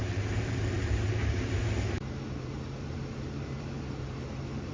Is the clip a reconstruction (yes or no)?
yes